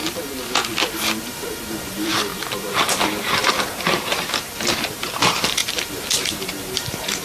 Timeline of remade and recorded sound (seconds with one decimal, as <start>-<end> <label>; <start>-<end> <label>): 0.0-1.2 recorded; 1.2-7.2 remade

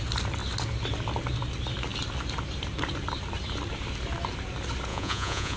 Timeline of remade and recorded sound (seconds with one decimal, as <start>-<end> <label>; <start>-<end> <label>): 0.0-4.9 recorded; 4.9-5.6 remade

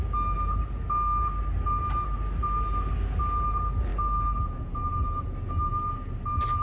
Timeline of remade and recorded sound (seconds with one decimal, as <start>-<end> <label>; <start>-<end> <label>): 0.0-6.6 recorded

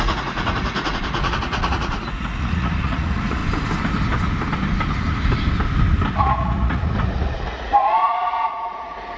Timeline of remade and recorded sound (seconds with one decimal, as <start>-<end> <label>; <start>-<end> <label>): 0.0-3.4 remade; 3.4-6.1 recorded; 6.1-9.2 remade

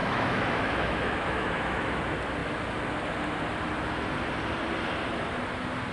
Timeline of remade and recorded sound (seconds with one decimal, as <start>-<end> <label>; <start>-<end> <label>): 0.0-2.0 remade; 2.0-5.9 recorded

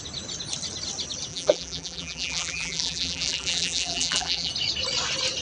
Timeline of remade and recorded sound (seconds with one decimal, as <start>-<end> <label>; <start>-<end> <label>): 0.0-1.3 recorded; 1.3-4.5 remade; 4.5-5.4 recorded

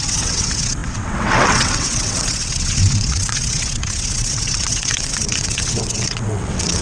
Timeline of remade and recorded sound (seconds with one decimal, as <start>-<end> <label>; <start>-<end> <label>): 0.0-6.8 remade

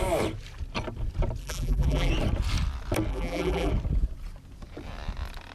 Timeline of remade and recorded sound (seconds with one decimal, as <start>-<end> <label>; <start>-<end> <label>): 0.0-1.4 recorded; 1.4-2.1 remade; 2.1-3.1 recorded; 3.1-3.7 remade; 3.7-5.5 recorded